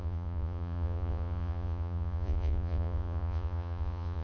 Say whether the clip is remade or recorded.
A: remade